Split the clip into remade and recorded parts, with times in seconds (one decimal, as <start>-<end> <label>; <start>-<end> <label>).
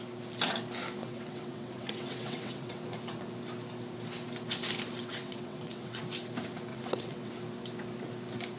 0.0-1.0 recorded; 1.0-2.8 remade; 2.8-5.0 recorded; 5.0-6.0 remade; 6.0-6.7 recorded; 6.7-7.3 remade; 7.3-8.6 recorded